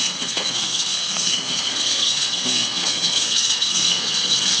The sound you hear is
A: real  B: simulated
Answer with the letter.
B